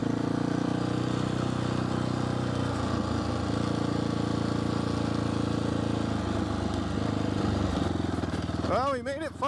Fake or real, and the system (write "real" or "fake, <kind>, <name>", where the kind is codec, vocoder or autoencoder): real